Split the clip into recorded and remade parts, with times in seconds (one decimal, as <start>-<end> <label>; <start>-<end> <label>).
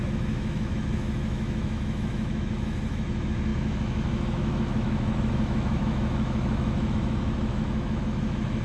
0.0-8.6 remade